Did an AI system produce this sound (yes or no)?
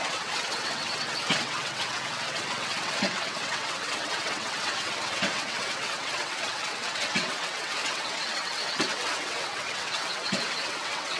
yes